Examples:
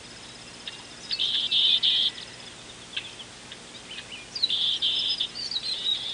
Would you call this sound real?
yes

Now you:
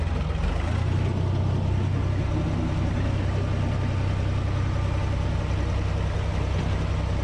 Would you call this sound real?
yes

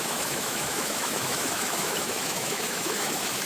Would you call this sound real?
no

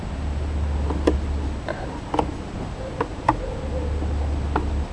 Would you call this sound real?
yes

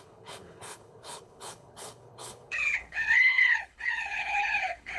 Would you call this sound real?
no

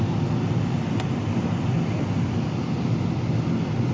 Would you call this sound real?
yes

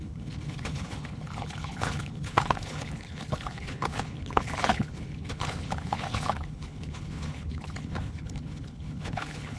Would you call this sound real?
no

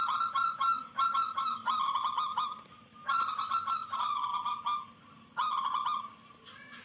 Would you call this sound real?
yes